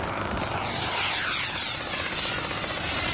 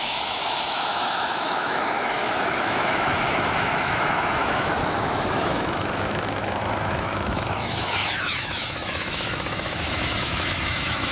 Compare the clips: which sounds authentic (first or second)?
first